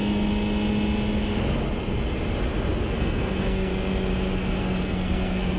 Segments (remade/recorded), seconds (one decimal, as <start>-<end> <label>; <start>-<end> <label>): 0.0-3.0 recorded; 3.0-3.7 remade; 3.7-4.6 recorded; 4.6-5.6 remade